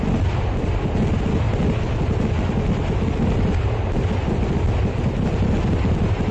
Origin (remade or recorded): recorded